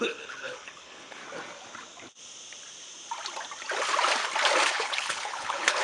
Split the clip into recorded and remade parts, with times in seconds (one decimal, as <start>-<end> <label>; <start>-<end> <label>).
0.0-1.2 remade; 1.2-4.7 recorded; 4.7-5.8 remade